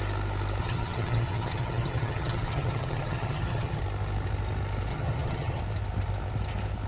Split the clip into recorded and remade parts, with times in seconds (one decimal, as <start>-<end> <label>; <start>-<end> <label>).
0.0-0.6 recorded; 0.6-3.8 remade; 3.8-4.9 recorded; 4.9-5.6 remade; 5.6-6.9 recorded